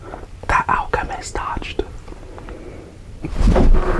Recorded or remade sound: remade